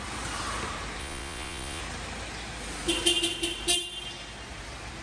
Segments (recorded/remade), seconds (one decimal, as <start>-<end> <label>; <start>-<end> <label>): 0.0-1.0 recorded; 1.0-1.8 remade; 1.8-5.0 recorded